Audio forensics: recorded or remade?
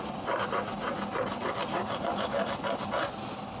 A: recorded